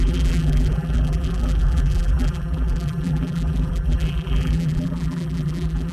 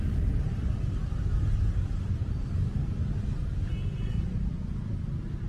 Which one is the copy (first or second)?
first